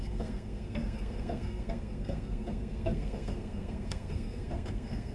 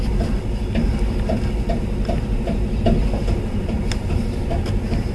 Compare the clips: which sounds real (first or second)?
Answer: second